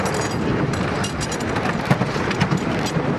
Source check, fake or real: real